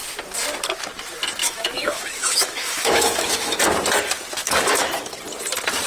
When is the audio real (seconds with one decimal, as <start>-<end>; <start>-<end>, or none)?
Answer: 0.0-1.4; 3.6-4.4; 5.2-5.9